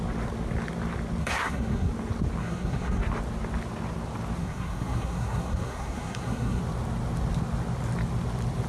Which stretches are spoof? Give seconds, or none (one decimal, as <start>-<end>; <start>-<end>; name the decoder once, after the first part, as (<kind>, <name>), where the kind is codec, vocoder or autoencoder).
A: 1.2-1.9 (codec, SNAC); 2.4-3.0; 4.4-6.6